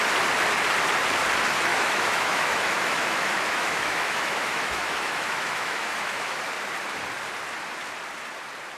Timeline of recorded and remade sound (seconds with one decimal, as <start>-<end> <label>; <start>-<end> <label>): 0.0-1.7 recorded; 1.7-6.4 remade; 6.4-8.8 recorded